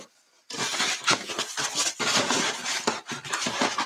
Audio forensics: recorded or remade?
recorded